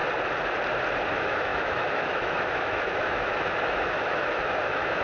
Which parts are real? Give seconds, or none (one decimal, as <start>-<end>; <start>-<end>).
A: 0.0-1.1